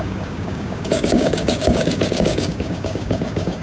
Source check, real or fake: fake